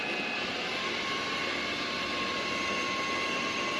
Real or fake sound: fake